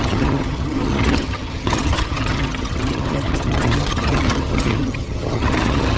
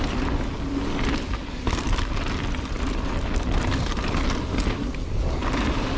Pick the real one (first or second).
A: second